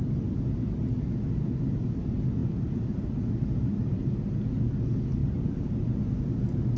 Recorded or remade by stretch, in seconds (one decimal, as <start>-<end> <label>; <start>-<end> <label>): 0.0-6.8 recorded